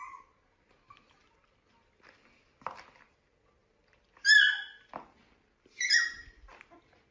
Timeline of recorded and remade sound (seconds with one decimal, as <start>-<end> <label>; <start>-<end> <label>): 0.0-7.1 recorded